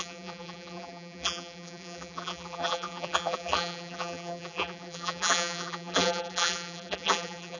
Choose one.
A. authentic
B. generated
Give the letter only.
B